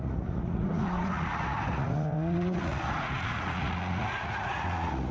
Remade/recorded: remade